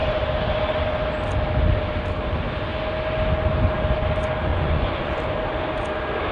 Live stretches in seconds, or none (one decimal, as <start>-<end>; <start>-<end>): 0.0-4.5; 5.1-6.3